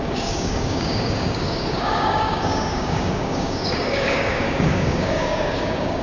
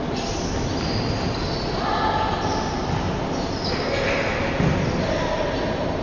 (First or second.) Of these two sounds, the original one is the second